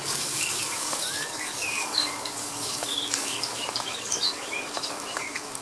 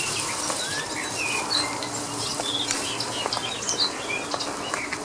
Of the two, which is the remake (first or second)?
first